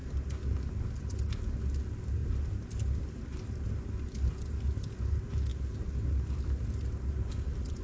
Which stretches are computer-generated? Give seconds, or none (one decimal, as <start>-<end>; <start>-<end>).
none